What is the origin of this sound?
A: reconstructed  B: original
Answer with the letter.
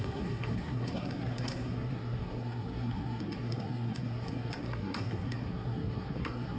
A